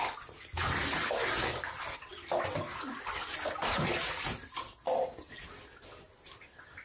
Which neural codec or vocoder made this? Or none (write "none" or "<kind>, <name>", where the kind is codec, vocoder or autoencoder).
none